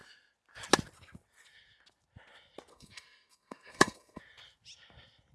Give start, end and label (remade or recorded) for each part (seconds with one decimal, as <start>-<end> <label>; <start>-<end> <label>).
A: 0.0-2.7 recorded; 2.7-4.2 remade; 4.2-5.3 recorded